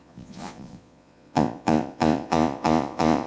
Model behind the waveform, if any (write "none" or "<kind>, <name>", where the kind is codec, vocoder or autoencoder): vocoder, Vocos